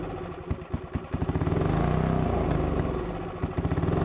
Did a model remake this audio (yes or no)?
no